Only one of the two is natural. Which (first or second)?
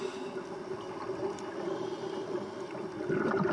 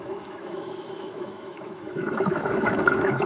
first